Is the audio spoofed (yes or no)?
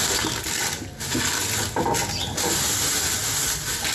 no